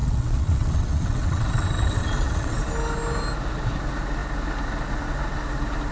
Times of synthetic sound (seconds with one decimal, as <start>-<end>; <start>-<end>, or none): 0.0-2.6